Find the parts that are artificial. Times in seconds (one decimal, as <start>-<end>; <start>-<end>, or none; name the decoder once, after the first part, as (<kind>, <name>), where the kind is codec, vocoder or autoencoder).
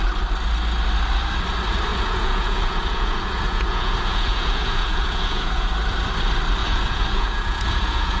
1.9-5.7 (vocoder, Vocos); 6.6-8.2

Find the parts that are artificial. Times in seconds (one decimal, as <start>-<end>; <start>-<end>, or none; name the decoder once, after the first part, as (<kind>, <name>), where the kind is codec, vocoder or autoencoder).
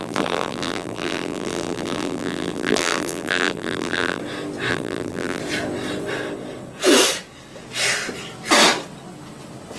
0.0-4.2 (vocoder, BigVGAN v2); 4.7-5.4